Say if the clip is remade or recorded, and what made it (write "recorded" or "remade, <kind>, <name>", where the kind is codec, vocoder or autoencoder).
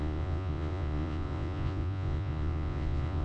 remade, vocoder, Vocos